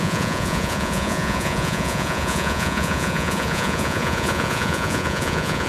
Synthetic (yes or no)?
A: yes